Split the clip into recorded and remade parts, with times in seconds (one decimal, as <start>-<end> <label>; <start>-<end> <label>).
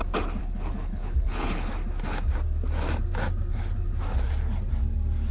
0.0-0.4 recorded; 0.4-1.7 remade; 1.7-5.3 recorded